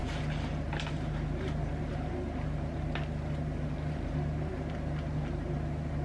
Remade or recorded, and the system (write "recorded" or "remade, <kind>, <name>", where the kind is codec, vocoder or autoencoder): recorded